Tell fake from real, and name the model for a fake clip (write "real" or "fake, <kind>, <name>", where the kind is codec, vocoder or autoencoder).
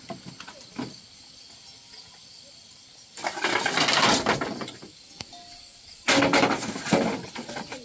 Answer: real